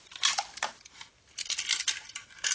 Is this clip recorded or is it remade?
recorded